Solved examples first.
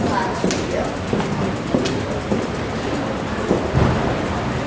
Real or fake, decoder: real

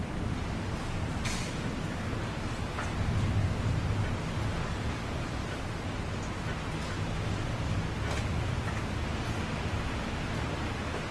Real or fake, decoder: real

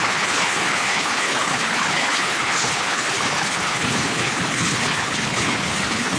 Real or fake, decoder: fake, codec, HILCodec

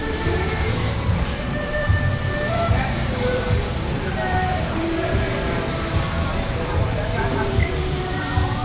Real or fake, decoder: fake, vocoder, BigVGAN v2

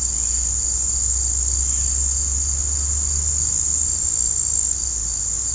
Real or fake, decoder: real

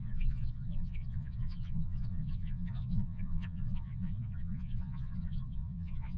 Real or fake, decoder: fake, vocoder, Vocos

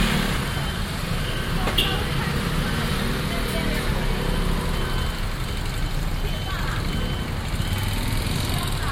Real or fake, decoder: real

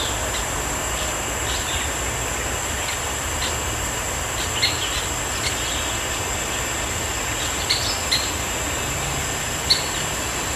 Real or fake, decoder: real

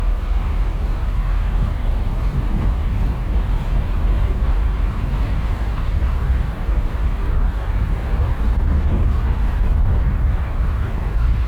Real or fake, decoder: fake, codec, DAC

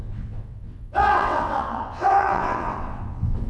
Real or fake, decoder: fake, vocoder, WaveNeXt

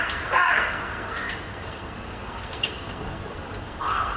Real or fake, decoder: fake, codec, SNAC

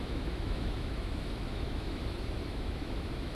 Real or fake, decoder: fake, autoencoder, DAC-VAE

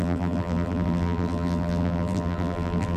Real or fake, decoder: fake, vocoder, BigVGAN v2